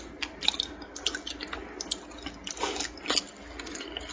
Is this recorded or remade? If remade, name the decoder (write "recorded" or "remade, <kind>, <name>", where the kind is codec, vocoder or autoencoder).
recorded